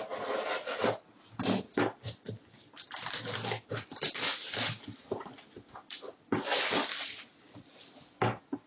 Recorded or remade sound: recorded